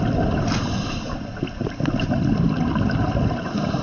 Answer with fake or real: real